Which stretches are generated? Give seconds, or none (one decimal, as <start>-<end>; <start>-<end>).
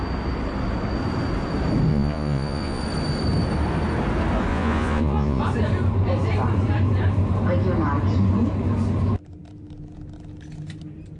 1.9-2.8; 4.5-5.4